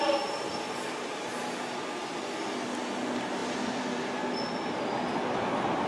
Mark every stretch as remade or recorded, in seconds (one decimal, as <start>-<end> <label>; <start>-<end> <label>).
0.0-5.9 recorded